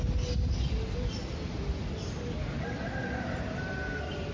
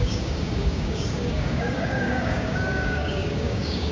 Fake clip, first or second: second